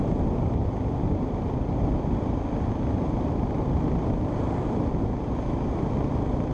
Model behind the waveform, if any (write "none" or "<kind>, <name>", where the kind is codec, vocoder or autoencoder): none